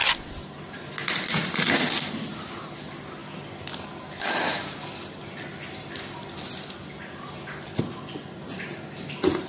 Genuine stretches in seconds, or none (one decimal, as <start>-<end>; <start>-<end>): 0.0-9.5